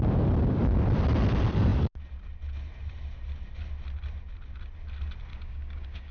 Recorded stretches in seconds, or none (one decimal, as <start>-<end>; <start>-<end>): 0.0-5.3